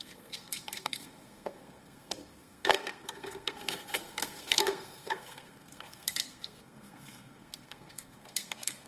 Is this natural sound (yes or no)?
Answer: no